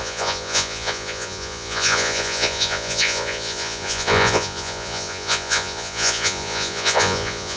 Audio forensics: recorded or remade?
remade